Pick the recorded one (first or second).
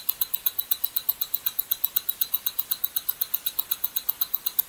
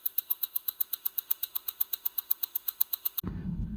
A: first